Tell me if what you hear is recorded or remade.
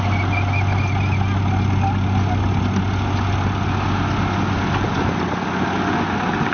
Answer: recorded